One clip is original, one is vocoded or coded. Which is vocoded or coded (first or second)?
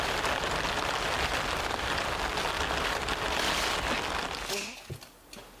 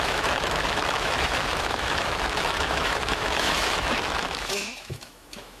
second